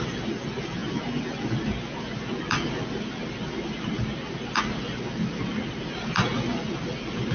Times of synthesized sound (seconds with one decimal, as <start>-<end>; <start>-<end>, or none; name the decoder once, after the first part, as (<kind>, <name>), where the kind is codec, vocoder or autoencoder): none